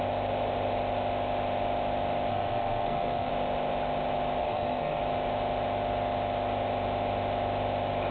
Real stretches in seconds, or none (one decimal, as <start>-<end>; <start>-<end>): 0.0-2.3; 3.3-4.4; 5.0-8.1